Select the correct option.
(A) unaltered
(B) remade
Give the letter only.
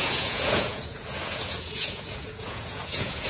B